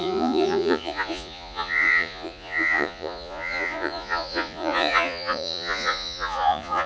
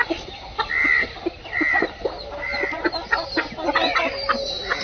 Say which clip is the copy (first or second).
first